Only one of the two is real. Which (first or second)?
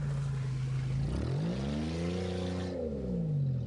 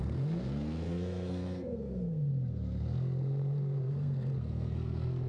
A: first